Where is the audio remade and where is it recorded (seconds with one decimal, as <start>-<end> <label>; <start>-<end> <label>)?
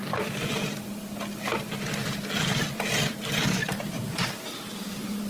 0.0-2.0 recorded; 2.0-5.3 remade